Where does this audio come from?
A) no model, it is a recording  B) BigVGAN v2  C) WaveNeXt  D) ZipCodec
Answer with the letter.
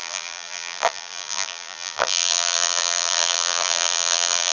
B